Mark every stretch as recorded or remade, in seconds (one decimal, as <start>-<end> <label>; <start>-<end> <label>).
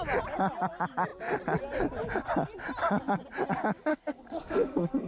0.0-3.9 recorded; 3.9-5.1 remade